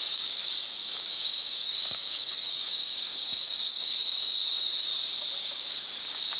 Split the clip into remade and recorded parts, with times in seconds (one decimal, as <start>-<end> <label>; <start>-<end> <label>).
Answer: 0.0-4.9 remade; 4.9-5.4 recorded; 5.4-6.4 remade